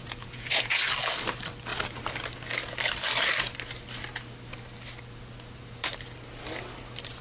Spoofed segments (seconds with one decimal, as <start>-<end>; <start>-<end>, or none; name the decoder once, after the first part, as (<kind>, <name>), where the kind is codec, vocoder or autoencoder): 0.0-0.8 (vocoder, Vocos)